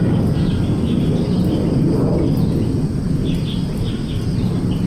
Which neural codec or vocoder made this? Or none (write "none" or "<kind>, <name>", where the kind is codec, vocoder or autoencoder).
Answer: vocoder, BigVGAN v2